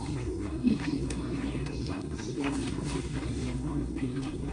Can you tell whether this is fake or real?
fake